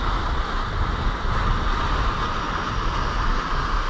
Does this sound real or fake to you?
real